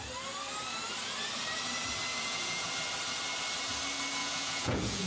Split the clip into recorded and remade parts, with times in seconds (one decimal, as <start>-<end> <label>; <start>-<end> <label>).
0.0-2.1 recorded; 2.1-2.7 remade; 2.7-4.2 recorded; 4.2-5.1 remade